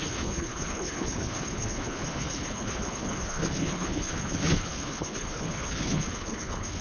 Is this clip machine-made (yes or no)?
yes